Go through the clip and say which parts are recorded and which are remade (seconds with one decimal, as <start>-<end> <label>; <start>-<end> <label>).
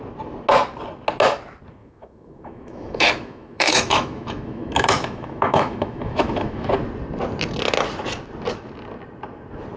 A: 0.0-1.8 recorded; 1.8-6.7 remade; 6.7-9.8 recorded